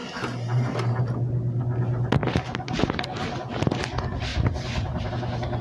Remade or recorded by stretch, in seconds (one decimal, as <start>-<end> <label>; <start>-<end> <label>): 0.0-1.0 remade; 1.0-4.3 recorded; 4.3-5.1 remade; 5.1-5.6 recorded